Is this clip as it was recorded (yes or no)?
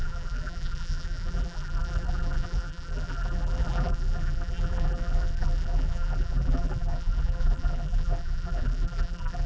no